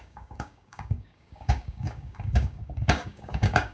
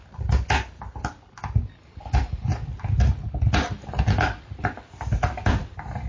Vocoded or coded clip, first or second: first